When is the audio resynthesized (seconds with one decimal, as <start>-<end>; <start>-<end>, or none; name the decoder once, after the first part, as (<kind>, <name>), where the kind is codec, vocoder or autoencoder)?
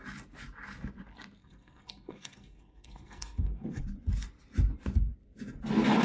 1.4-3.8 (codec, SNAC)